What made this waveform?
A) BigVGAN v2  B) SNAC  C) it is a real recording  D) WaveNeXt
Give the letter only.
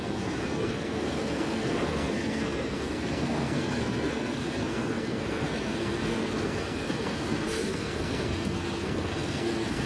B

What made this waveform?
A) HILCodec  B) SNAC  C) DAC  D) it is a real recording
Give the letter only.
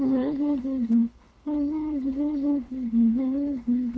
A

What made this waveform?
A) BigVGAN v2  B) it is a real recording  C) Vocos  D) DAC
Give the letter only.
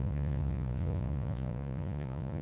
C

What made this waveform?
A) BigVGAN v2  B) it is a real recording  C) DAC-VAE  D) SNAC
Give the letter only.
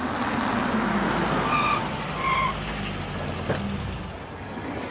B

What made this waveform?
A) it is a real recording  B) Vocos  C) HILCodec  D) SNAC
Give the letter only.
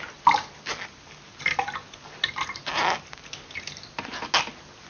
A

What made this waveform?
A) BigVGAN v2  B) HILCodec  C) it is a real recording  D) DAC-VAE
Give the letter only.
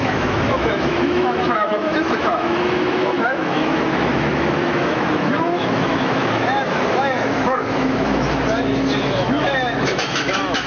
D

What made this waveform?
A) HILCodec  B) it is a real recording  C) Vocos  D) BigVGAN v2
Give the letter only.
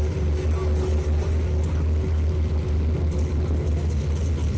B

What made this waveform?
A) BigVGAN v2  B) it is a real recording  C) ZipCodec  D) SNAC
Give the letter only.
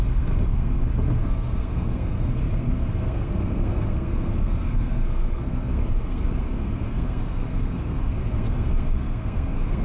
D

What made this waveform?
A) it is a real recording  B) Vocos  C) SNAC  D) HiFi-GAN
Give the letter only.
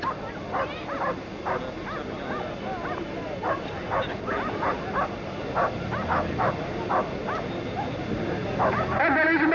A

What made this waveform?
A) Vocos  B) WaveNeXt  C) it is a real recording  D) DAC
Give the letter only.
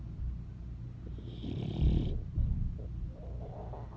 C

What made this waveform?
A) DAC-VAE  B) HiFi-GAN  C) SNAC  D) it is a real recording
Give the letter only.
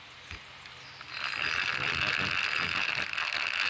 D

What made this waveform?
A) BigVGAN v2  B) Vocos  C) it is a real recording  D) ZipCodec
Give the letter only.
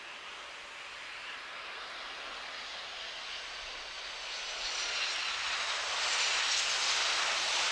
C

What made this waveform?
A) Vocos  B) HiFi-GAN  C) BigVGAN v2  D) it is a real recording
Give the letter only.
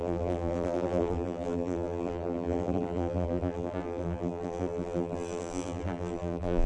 C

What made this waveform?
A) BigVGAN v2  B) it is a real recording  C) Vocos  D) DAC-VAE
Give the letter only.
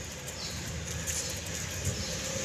B